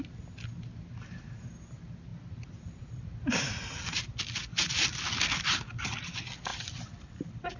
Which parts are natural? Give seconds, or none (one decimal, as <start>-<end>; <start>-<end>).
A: 0.0-2.1; 3.9-6.5